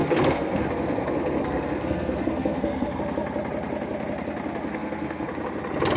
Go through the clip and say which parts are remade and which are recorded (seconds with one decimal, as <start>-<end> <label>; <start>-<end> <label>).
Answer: 0.0-3.0 remade; 3.0-4.7 recorded; 4.7-5.3 remade; 5.3-6.0 recorded